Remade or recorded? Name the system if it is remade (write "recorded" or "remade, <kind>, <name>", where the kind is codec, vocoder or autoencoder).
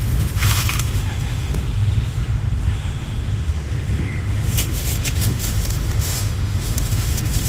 remade, autoencoder, DAC-VAE